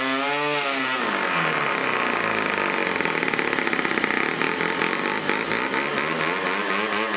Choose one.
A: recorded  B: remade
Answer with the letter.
A